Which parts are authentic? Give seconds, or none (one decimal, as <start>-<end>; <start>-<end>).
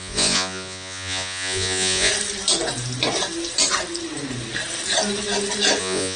2.1-5.8